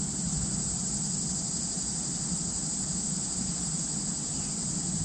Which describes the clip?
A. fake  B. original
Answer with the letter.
B